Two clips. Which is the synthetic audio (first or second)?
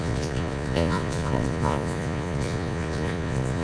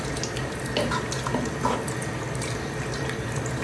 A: first